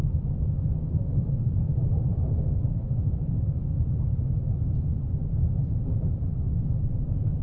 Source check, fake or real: real